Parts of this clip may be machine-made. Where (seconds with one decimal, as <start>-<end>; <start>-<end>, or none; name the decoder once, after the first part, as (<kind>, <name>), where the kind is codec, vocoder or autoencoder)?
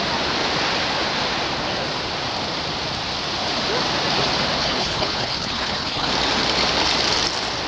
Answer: 4.6-6.1 (codec, HILCodec)